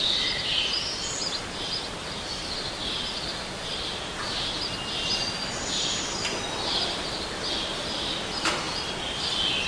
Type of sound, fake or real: real